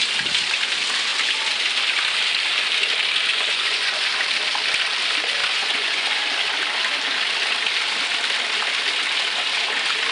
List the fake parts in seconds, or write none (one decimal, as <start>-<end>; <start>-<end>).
3.3-4.1; 5.4-6.2